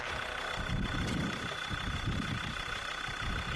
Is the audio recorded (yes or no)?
yes